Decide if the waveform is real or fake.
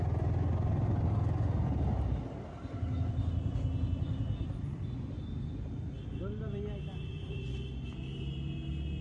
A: real